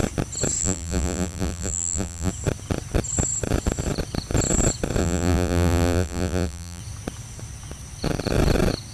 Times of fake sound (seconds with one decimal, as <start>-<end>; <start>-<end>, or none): 0.6-2.3; 5.0-6.8